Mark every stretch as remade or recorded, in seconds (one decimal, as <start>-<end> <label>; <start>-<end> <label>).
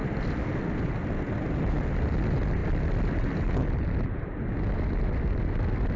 0.0-2.1 remade; 2.1-6.0 recorded